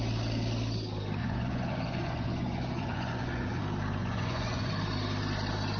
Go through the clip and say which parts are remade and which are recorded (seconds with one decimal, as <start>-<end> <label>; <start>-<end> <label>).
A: 0.0-1.2 recorded; 1.2-3.6 remade; 3.6-4.0 recorded; 4.0-4.7 remade; 4.7-5.8 recorded